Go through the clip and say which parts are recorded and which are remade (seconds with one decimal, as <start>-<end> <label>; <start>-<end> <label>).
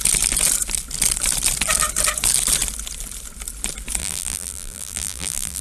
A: 0.0-4.0 recorded; 4.0-5.6 remade